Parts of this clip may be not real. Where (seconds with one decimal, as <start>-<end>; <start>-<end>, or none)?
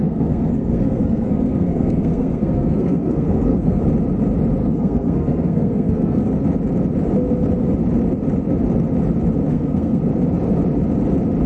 0.0-3.8; 4.6-6.3; 9.5-10.0